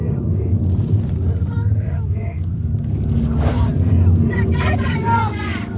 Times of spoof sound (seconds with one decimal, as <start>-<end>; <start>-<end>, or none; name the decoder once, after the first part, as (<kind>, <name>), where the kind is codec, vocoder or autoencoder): 0.0-0.6 (codec, DAC); 1.4-3.7; 4.3-5.8